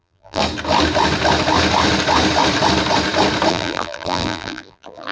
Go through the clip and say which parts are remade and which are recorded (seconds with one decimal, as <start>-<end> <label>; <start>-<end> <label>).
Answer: 0.0-0.4 remade; 0.4-3.5 recorded; 3.5-5.1 remade